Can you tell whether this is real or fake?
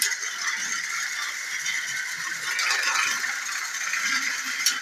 fake